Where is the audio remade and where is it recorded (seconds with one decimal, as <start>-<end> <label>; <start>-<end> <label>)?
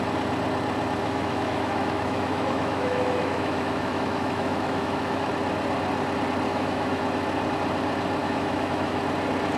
0.0-1.0 recorded; 1.0-5.3 remade; 5.3-6.5 recorded; 6.5-7.0 remade; 7.0-8.2 recorded; 8.2-9.0 remade; 9.0-9.6 recorded